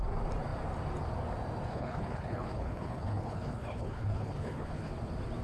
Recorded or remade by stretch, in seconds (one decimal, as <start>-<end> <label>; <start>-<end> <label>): 0.0-1.7 recorded; 1.7-4.9 remade; 4.9-5.4 recorded